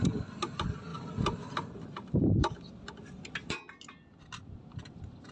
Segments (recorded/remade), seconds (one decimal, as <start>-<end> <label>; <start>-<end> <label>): 0.0-5.3 recorded